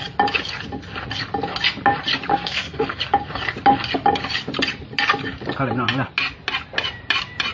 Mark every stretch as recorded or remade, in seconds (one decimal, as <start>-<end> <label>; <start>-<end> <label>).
0.0-2.3 recorded; 2.3-3.0 remade; 3.0-7.5 recorded